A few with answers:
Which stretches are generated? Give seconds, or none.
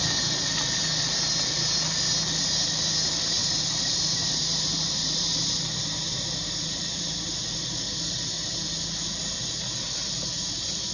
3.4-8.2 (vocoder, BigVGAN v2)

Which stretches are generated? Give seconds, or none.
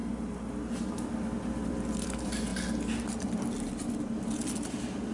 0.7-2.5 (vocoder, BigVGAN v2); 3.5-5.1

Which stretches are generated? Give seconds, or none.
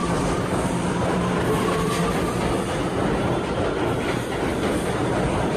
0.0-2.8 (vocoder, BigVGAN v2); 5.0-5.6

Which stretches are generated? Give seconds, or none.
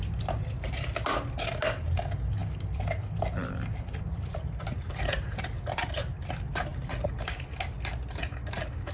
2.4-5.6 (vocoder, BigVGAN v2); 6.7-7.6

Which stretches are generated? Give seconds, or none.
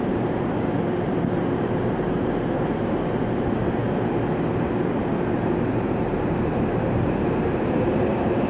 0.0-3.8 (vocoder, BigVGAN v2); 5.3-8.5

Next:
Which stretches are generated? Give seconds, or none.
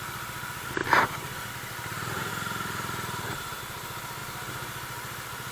none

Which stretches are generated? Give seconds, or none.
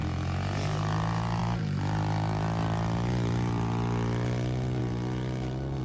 none